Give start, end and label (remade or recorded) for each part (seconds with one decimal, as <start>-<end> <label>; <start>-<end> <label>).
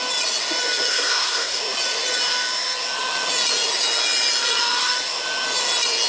0.0-0.9 recorded; 0.9-1.6 remade; 1.6-6.1 recorded